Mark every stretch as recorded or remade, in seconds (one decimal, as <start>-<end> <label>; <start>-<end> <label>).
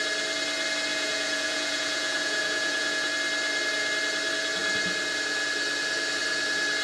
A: 0.0-0.9 recorded; 0.9-3.1 remade; 3.1-6.8 recorded